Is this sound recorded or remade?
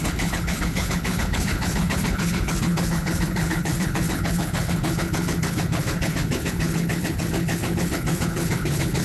remade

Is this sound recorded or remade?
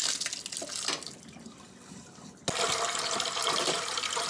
recorded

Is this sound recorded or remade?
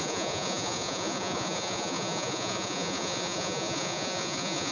remade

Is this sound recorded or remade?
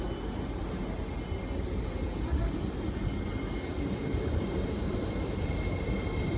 recorded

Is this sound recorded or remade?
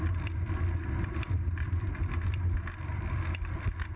remade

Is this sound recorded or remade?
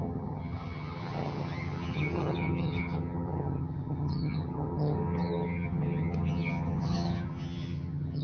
remade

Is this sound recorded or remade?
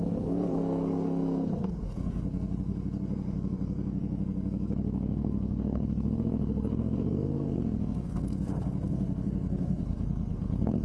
remade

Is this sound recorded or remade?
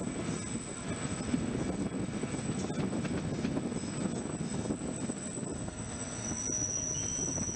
recorded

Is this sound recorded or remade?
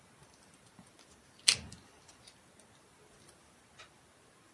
recorded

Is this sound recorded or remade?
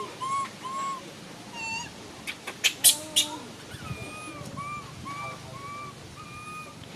recorded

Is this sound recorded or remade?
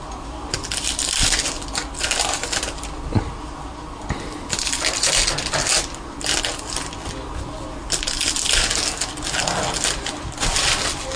recorded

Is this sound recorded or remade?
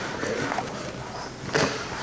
recorded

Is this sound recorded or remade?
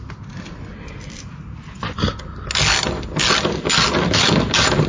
recorded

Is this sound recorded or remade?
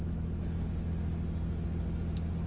recorded